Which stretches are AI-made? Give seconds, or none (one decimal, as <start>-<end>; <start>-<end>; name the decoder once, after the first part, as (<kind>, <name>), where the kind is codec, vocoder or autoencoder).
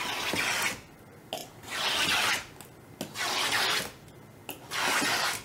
none